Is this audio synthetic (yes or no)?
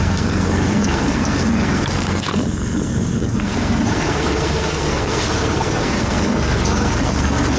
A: yes